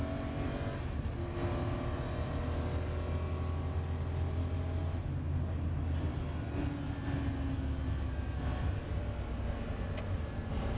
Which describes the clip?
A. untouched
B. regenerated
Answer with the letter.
A